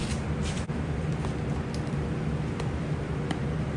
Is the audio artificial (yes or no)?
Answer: yes